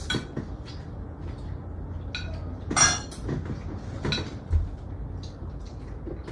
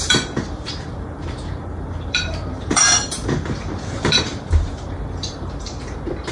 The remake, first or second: second